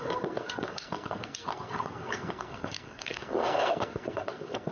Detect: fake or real fake